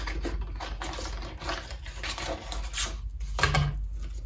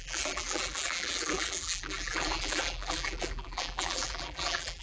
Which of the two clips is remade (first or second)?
second